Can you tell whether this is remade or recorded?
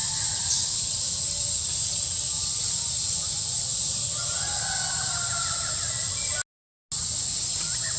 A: recorded